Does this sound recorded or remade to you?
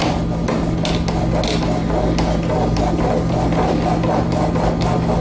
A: recorded